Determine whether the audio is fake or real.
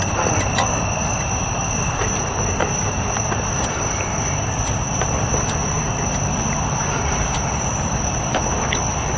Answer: fake